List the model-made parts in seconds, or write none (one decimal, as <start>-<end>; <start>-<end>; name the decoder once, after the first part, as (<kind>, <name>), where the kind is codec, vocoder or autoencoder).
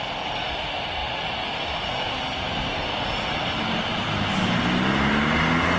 none